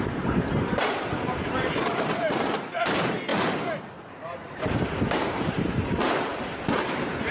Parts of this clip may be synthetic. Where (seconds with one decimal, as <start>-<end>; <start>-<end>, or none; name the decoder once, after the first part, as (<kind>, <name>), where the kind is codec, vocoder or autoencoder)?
0.0-3.3 (vocoder, BigVGAN v2); 3.9-6.3